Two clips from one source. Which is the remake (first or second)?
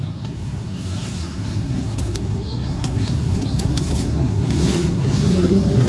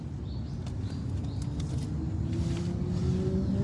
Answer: first